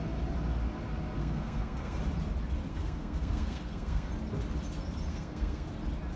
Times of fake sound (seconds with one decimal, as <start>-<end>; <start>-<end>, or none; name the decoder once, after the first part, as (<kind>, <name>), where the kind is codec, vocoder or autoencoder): 1.2-2.0 (codec, SNAC); 2.7-4.1; 5.1-5.7